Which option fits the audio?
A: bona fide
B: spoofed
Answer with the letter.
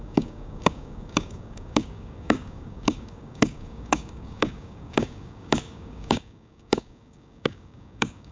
B